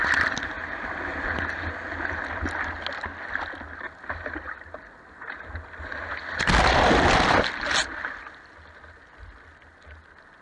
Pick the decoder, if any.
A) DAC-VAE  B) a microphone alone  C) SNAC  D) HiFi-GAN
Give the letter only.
B